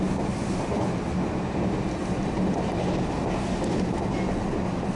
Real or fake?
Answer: real